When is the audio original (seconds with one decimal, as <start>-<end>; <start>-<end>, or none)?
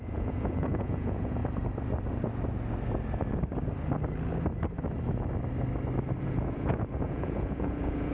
1.4-6.2